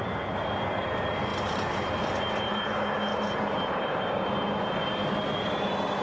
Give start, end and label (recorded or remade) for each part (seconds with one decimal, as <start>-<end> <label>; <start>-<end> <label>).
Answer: 0.0-1.3 recorded; 1.3-2.7 remade; 2.7-3.1 recorded; 3.1-4.3 remade; 4.3-6.0 recorded